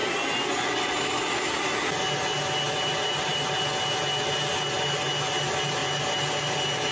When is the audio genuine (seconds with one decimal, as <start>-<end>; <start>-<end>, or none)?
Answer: 0.0-6.9